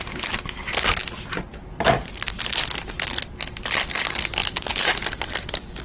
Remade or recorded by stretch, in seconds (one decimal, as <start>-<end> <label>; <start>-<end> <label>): 0.0-5.8 recorded